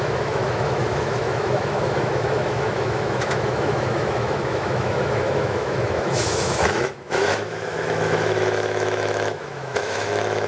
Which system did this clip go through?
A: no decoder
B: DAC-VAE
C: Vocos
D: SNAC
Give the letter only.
B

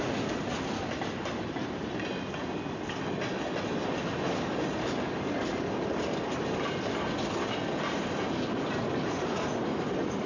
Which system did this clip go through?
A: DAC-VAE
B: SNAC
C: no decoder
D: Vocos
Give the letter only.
C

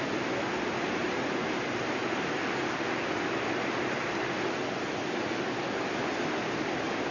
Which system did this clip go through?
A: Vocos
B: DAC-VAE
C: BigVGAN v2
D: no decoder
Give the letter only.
D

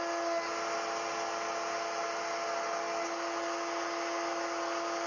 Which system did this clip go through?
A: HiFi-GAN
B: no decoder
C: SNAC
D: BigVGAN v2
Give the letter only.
B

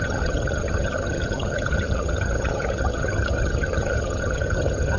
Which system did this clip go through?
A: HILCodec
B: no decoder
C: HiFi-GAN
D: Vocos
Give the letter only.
C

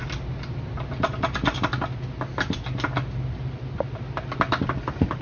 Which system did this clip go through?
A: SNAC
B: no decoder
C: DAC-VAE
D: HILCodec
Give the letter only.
B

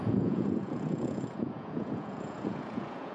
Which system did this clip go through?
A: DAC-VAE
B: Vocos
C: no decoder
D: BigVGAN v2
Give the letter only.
B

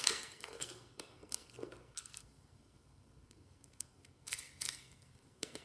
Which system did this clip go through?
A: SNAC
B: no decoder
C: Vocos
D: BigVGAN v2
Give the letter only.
A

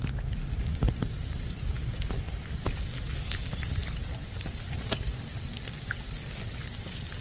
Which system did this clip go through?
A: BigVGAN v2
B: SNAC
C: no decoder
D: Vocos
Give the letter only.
C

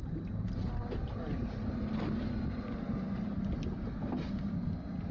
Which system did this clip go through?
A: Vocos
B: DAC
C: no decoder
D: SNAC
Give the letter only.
C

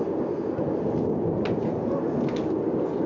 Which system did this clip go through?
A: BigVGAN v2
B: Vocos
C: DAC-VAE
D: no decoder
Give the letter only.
D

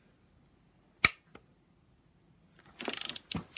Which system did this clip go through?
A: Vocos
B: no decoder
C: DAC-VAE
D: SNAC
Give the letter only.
B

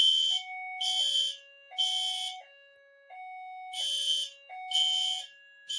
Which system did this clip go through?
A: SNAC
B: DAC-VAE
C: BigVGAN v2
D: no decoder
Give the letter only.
D